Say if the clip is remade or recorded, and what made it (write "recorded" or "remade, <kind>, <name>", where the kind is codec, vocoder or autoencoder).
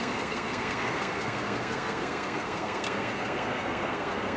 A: remade, codec, SNAC